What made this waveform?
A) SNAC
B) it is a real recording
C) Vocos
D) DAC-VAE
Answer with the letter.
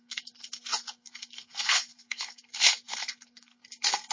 A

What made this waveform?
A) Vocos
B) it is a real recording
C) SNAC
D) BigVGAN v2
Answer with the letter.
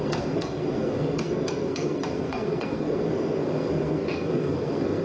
C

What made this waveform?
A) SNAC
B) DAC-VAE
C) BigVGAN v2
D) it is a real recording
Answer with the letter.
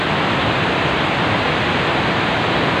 D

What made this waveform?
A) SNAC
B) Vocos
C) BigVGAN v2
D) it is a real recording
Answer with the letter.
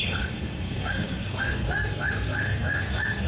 A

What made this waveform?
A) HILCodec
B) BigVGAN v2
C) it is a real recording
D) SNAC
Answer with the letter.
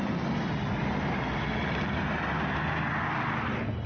C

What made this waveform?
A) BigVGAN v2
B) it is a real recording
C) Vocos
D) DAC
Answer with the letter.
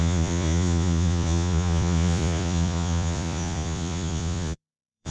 C